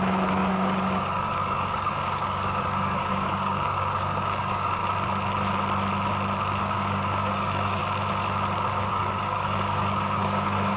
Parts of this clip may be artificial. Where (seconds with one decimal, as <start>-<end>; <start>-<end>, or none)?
0.0-4.8; 6.6-7.8; 8.9-10.8